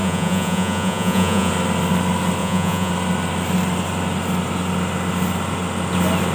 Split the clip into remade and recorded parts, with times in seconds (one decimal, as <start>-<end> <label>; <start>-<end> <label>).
0.0-1.5 remade; 1.5-2.4 recorded; 2.4-2.9 remade; 2.9-6.3 recorded